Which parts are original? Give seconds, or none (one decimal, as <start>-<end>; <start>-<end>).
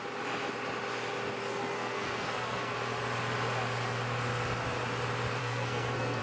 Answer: 0.0-1.4; 2.7-5.4